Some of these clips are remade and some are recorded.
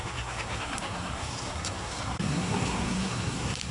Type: remade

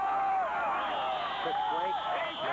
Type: recorded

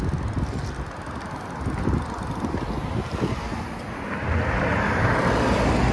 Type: recorded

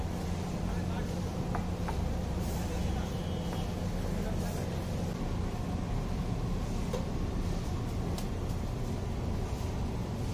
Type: recorded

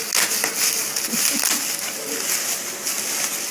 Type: recorded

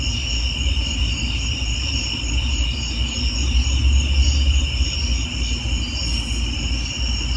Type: recorded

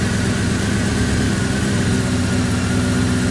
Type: recorded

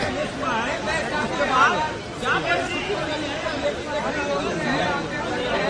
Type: recorded